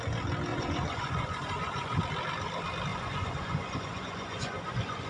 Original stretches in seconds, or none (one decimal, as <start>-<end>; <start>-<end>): 0.0-0.5; 2.0-2.9